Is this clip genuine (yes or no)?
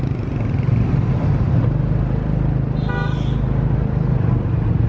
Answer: yes